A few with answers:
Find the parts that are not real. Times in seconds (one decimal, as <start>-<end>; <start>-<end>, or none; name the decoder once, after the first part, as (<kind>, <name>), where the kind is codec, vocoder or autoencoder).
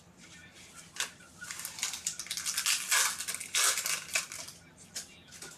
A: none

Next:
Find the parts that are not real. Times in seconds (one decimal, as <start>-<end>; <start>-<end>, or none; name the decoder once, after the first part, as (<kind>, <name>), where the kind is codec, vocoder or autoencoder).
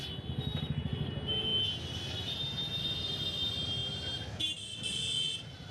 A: none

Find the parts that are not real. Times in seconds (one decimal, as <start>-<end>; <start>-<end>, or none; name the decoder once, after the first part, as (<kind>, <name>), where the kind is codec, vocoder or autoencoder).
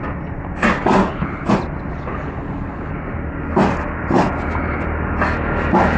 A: 1.0-1.5 (codec, HILCodec); 1.9-2.9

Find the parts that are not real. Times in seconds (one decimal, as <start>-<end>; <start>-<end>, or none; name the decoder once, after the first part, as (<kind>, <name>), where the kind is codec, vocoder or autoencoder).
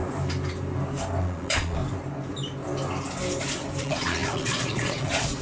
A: 1.2-1.8 (vocoder, Vocos); 3.8-5.4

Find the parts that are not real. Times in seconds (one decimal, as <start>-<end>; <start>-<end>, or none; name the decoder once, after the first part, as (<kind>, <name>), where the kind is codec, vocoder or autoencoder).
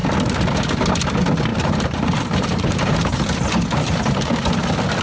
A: 1.5-4.5 (vocoder, BigVGAN v2)